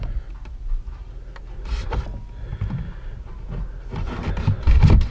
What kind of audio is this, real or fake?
real